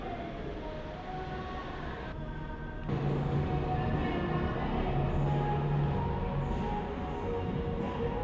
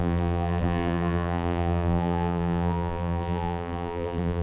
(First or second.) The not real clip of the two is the second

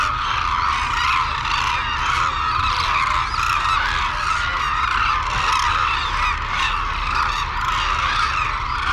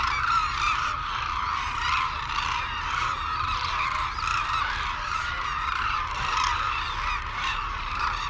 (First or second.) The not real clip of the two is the second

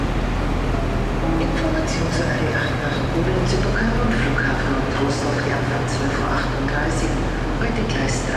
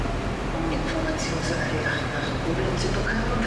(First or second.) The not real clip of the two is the second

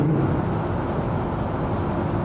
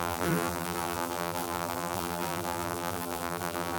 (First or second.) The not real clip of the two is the second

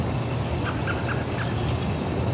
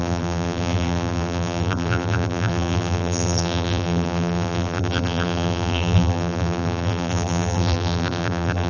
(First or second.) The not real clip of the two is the second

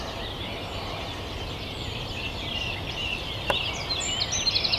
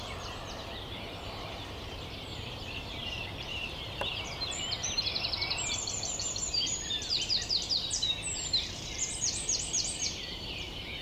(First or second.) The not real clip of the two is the second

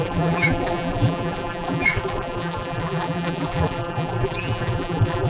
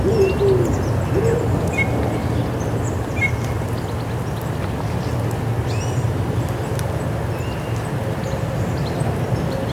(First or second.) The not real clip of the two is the first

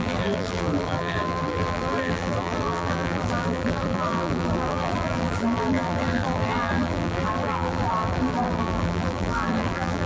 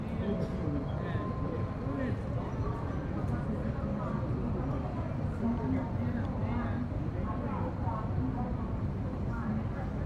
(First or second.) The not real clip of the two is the first